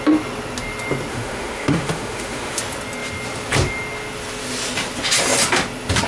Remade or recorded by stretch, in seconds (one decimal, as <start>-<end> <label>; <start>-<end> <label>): 0.0-1.1 recorded; 1.1-2.6 remade; 2.6-6.1 recorded